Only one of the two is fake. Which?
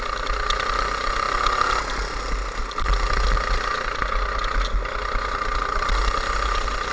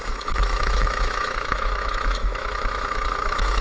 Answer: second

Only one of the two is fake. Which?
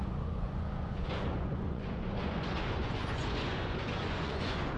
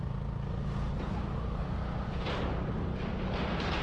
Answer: first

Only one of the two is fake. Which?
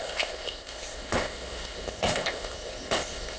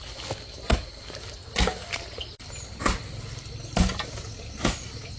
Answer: first